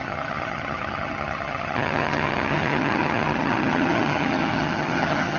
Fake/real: fake